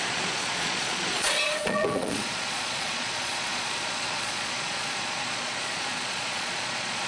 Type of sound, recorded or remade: remade